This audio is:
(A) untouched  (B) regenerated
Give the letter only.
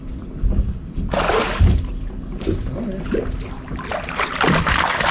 A